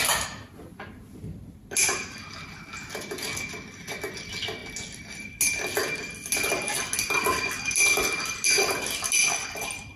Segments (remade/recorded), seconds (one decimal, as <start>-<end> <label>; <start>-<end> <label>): 0.0-10.0 recorded

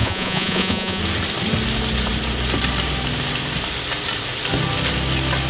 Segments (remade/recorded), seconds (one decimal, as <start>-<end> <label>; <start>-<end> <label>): 0.0-1.0 remade; 1.0-5.5 recorded

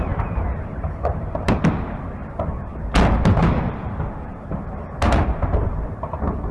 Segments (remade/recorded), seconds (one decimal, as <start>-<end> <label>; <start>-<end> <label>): 0.0-2.2 recorded; 2.2-2.7 remade; 2.7-3.4 recorded; 3.4-5.9 remade; 5.9-6.5 recorded

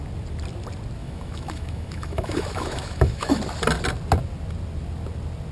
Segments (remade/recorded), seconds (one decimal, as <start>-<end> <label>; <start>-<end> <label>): 0.0-1.0 recorded; 1.0-3.4 remade; 3.4-5.5 recorded

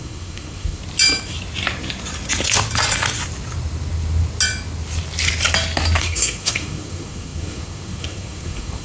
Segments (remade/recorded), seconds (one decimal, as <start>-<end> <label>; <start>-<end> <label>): 0.0-0.8 remade; 0.8-6.0 recorded; 6.0-8.8 remade

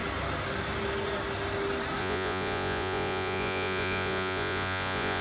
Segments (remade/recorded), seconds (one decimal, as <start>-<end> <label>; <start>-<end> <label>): 0.0-2.0 recorded; 2.0-5.2 remade